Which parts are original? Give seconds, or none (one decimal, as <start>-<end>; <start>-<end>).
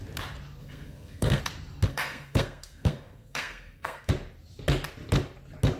0.0-0.6; 1.4-1.9; 4.1-5.8